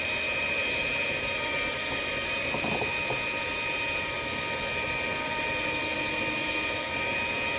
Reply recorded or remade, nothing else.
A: recorded